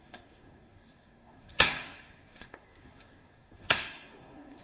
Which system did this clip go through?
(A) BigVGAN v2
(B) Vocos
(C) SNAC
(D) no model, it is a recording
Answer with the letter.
C